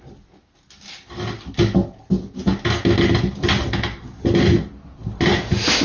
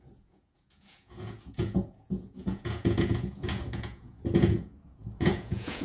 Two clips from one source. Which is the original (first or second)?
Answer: first